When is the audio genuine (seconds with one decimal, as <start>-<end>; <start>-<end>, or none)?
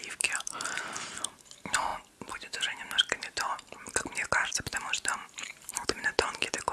1.9-4.5